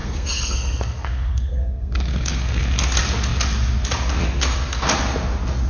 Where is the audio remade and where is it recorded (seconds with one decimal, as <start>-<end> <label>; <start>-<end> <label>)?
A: 0.0-2.6 remade; 2.6-5.7 recorded